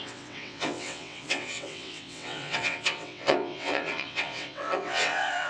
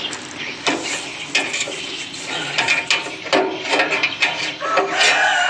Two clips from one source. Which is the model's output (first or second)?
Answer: first